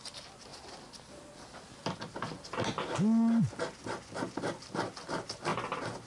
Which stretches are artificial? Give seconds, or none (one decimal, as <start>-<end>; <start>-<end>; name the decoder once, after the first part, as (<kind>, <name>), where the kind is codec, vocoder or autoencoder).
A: none